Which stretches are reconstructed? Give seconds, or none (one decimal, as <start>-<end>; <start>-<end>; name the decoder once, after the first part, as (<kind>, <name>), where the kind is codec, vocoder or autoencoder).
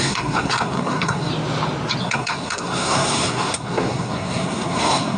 0.0-1.3 (codec, SNAC); 2.0-5.2